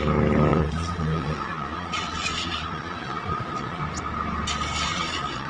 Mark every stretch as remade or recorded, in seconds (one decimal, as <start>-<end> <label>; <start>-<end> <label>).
0.0-0.5 recorded; 0.5-3.8 remade; 3.8-4.9 recorded; 4.9-5.5 remade